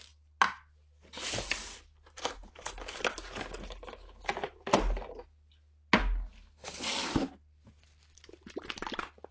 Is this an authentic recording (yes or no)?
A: yes